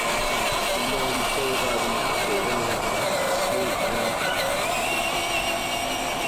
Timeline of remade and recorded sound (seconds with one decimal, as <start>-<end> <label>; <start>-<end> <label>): 0.0-0.6 recorded; 0.6-4.4 remade; 4.4-6.3 recorded